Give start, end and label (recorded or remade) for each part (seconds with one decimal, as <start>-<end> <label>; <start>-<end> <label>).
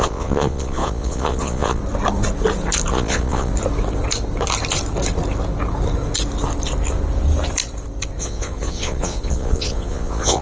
0.0-1.8 remade; 1.8-2.9 recorded; 2.9-3.5 remade; 3.5-8.2 recorded; 8.2-10.4 remade